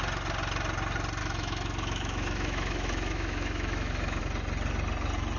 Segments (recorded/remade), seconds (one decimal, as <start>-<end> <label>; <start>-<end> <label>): 0.0-1.2 recorded; 1.2-4.2 remade; 4.2-5.4 recorded